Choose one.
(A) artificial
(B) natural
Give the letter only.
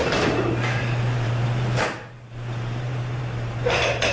A